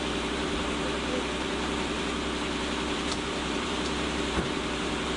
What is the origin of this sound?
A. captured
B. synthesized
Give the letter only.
B